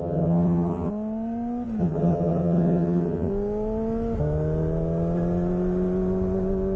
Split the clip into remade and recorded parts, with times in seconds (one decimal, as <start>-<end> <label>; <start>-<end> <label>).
0.0-0.9 remade; 0.9-1.8 recorded; 1.8-3.3 remade; 3.3-6.8 recorded